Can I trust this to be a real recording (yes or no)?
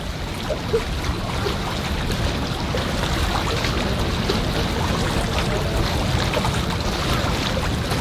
yes